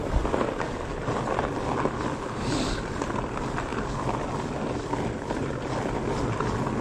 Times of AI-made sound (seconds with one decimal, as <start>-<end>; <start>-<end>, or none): none